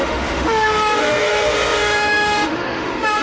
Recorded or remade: remade